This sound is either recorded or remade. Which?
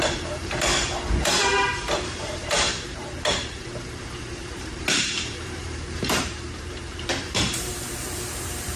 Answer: remade